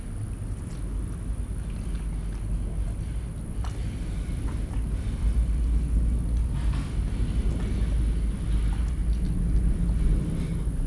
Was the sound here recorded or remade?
recorded